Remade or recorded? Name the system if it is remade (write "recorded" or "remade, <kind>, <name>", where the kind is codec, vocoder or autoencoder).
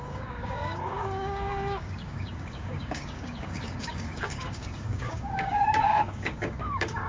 remade, codec, DAC